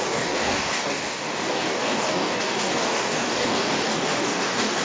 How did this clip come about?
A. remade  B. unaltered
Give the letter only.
A